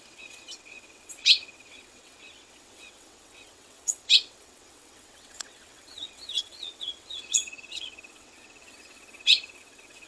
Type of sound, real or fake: fake